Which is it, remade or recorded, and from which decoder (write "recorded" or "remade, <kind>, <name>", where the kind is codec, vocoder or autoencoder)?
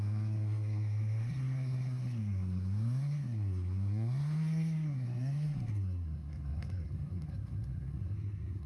remade, codec, SNAC